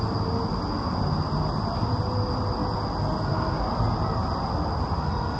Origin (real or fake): real